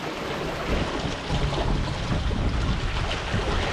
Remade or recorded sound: recorded